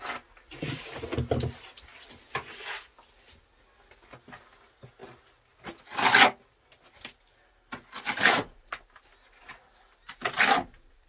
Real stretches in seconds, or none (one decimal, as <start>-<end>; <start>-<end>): 0.0-11.1